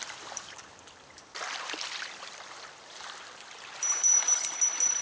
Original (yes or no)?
no